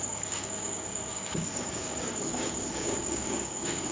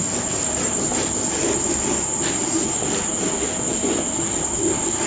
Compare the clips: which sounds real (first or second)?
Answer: second